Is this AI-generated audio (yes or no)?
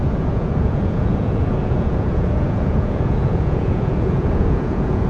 yes